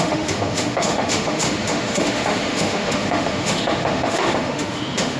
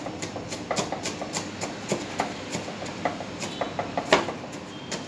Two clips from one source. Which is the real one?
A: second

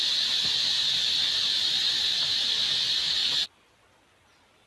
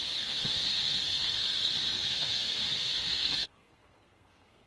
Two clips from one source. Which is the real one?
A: first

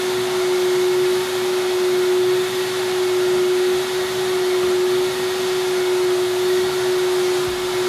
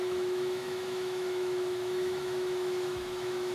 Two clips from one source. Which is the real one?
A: first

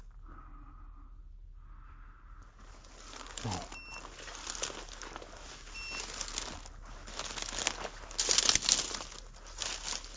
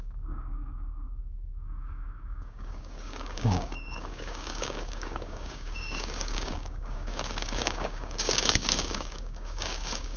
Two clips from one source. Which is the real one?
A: first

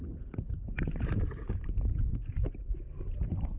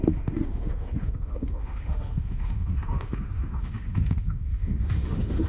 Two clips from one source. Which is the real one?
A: first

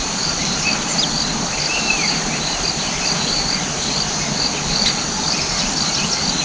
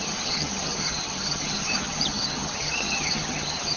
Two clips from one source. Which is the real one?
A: first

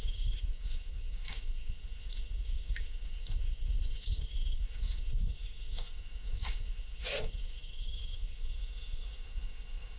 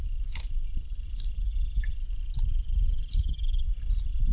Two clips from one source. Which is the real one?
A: second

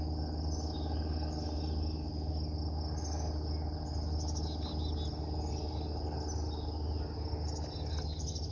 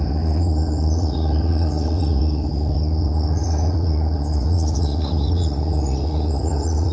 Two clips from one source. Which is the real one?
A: first